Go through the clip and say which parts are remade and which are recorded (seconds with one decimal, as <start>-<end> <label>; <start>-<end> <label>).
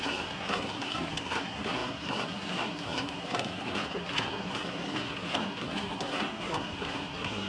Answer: 0.0-7.5 remade